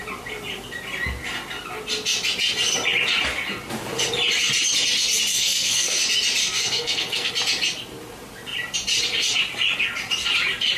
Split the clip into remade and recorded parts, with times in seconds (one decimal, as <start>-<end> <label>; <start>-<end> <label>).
0.0-5.3 recorded; 5.3-6.0 remade; 6.0-6.4 recorded; 6.4-7.3 remade; 7.3-10.8 recorded